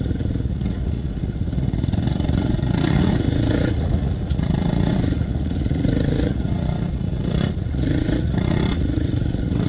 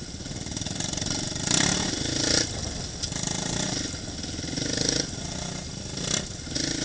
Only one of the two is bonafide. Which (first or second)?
second